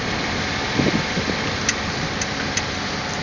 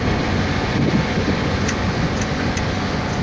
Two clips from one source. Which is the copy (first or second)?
second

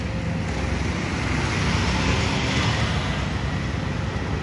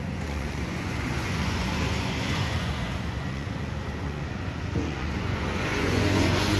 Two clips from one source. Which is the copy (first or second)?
second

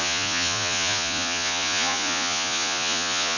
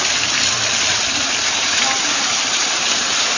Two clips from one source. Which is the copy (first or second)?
first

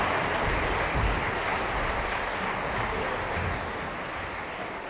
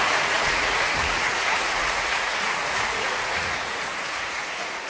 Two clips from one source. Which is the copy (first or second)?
second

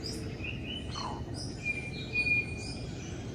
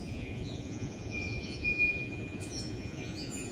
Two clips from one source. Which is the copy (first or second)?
second